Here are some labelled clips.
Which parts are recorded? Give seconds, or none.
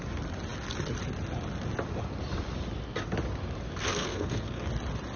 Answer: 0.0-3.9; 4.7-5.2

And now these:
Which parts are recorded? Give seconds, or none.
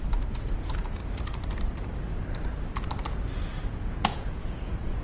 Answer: 1.0-3.6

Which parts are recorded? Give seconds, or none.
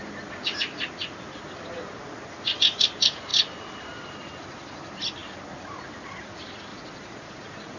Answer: 0.0-6.7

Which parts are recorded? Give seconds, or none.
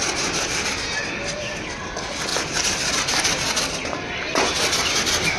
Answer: 0.0-5.4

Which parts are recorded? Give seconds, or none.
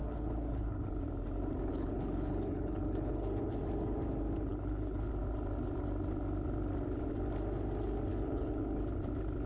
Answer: 1.0-1.7; 3.6-4.5; 5.1-8.1; 8.6-9.5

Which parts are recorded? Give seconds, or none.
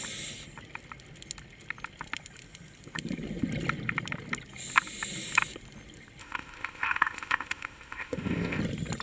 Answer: 0.0-6.2; 8.6-9.0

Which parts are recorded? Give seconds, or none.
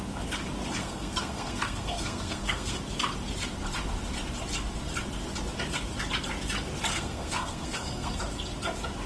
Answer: 0.0-0.8; 2.8-6.9; 8.2-9.1